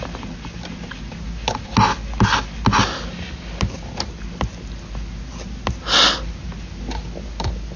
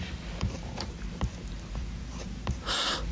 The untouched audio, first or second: first